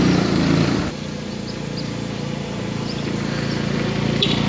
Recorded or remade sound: recorded